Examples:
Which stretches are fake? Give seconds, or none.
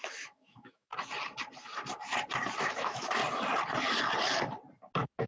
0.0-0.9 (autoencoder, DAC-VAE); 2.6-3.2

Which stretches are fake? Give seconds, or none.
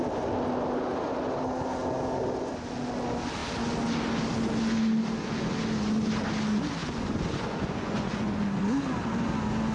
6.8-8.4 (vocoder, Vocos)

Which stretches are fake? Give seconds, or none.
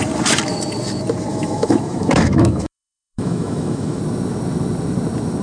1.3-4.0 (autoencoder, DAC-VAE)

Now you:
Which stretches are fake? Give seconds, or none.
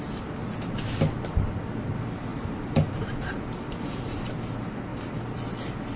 2.3-4.3 (vocoder, BigVGAN v2); 4.9-5.4